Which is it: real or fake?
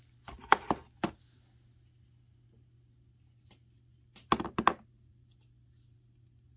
real